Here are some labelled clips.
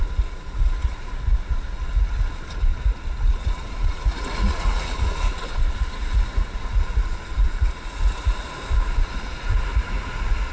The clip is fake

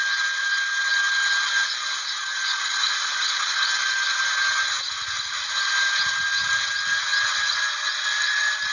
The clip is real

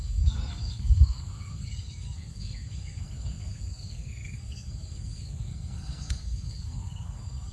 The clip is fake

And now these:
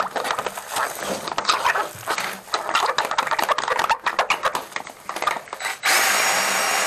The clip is real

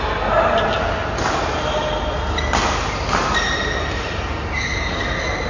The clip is real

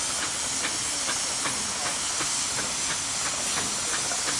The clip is real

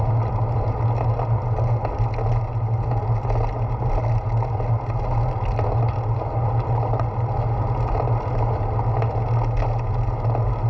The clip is real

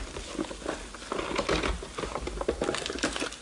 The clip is real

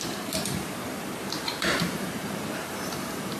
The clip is fake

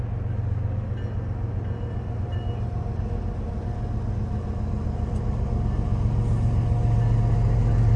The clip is real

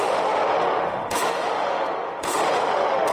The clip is fake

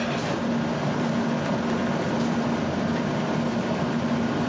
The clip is real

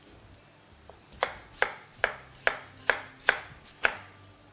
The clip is real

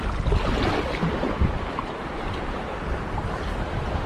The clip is real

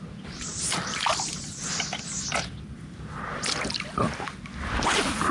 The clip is real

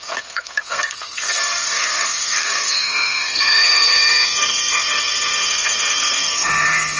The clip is fake